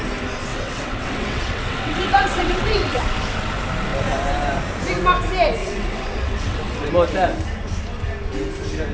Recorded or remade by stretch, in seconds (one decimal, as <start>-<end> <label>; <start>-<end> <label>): 0.0-0.5 recorded; 0.5-3.0 remade; 3.0-5.6 recorded; 5.6-6.9 remade; 6.9-8.9 recorded